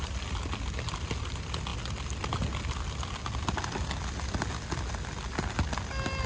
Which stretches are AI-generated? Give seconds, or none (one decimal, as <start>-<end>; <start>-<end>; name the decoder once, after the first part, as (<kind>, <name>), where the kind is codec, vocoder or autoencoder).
none

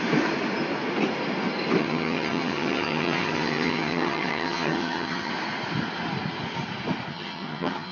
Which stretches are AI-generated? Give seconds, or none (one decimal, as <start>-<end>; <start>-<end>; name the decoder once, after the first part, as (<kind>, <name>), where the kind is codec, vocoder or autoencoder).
1.8-5.3 (vocoder, HiFi-GAN); 7.1-7.9

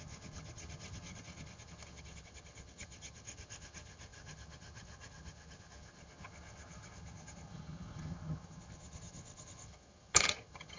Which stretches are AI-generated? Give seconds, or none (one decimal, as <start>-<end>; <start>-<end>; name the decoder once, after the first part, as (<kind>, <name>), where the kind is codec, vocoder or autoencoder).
0.0-10.8 (vocoder, HiFi-GAN)

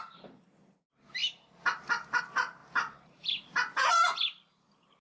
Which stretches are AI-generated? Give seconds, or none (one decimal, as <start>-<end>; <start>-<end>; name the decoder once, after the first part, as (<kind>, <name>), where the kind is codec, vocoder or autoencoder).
none

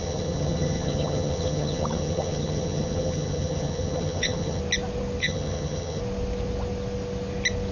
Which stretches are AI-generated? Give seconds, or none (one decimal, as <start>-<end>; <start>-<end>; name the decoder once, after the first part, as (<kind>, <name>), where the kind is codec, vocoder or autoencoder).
0.0-4.6 (vocoder, HiFi-GAN); 5.2-6.0